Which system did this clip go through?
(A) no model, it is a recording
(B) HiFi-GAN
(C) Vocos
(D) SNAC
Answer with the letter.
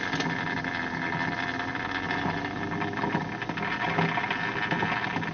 A